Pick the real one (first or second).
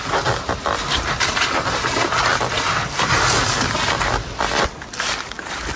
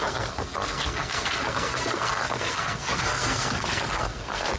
first